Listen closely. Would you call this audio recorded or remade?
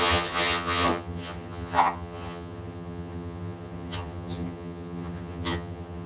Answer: remade